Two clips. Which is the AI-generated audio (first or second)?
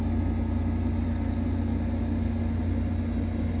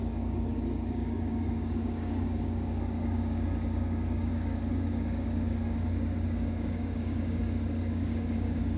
second